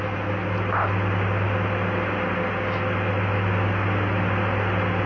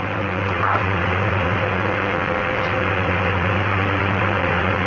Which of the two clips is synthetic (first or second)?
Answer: second